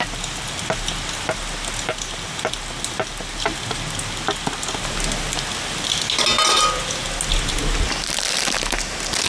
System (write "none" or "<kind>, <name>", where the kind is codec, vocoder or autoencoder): none